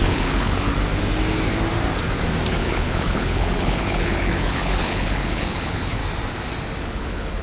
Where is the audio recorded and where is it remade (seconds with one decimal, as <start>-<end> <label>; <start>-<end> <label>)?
0.0-0.7 remade; 0.7-2.5 recorded; 2.5-6.0 remade; 6.0-6.8 recorded; 6.8-7.4 remade